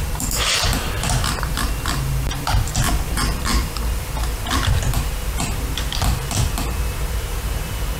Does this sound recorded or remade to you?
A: remade